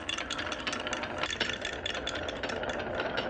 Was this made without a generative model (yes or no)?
yes